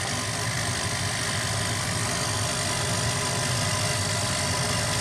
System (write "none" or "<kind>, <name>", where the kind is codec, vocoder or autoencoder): none